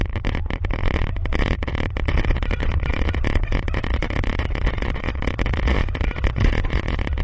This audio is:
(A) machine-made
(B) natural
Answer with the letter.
A